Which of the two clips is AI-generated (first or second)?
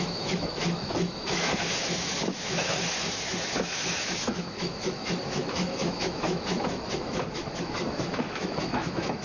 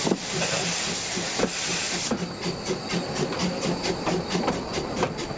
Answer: first